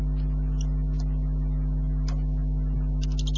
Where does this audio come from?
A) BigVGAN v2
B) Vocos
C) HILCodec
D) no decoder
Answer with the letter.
D